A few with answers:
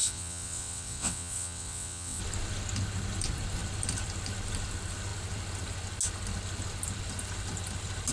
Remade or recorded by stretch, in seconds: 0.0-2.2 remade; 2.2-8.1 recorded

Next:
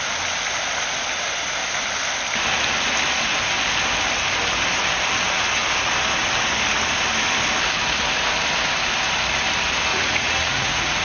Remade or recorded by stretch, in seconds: 0.0-9.9 recorded; 9.9-11.0 remade

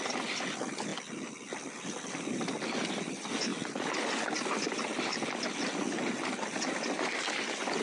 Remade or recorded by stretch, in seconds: 0.0-7.8 recorded

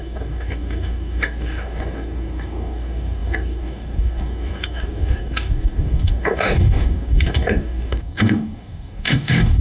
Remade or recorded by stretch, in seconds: 0.0-9.6 remade